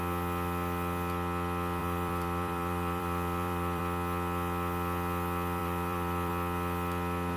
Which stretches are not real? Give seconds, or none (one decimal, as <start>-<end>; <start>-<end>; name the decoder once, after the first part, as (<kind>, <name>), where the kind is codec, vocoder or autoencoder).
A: 1.8-3.8 (vocoder, BigVGAN v2); 5.6-6.3